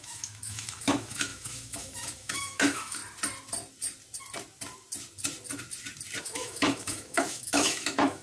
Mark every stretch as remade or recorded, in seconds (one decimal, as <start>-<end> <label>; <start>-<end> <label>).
0.0-3.0 remade; 3.0-6.2 recorded; 6.2-8.2 remade